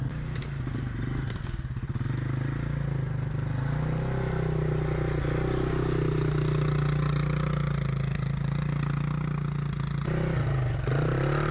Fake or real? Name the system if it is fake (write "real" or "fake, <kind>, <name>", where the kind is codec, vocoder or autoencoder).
real